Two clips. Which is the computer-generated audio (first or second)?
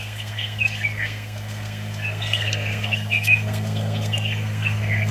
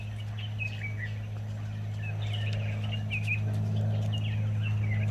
first